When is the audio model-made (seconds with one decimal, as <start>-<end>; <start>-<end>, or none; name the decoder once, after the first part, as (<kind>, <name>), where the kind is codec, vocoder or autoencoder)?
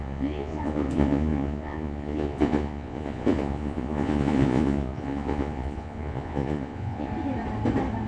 0.0-7.1 (vocoder, Vocos)